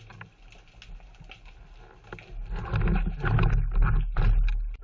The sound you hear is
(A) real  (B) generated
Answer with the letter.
A